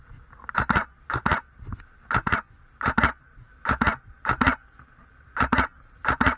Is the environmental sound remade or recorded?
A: recorded